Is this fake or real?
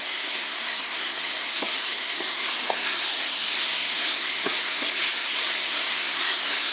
fake